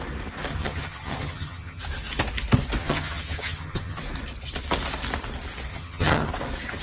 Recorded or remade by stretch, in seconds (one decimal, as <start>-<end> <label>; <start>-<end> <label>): 0.0-0.5 recorded; 0.5-1.8 remade; 1.8-2.8 recorded; 2.8-4.0 remade; 4.0-5.7 recorded; 5.7-6.3 remade; 6.3-6.8 recorded